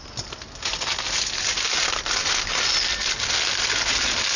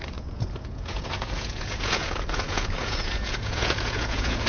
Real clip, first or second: first